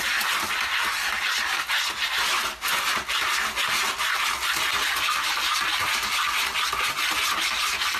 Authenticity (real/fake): real